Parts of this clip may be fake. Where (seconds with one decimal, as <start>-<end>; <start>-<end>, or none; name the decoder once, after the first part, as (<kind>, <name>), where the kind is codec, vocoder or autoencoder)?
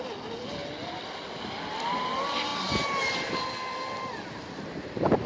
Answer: none